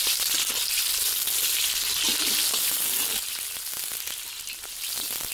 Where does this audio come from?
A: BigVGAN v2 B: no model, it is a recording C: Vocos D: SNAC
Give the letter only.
B